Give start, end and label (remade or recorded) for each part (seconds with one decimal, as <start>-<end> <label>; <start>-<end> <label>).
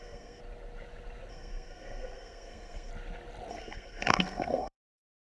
0.0-0.4 remade; 0.4-1.3 recorded; 1.3-2.9 remade; 2.9-3.5 recorded; 3.5-5.3 remade